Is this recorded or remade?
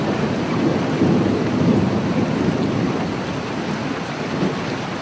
recorded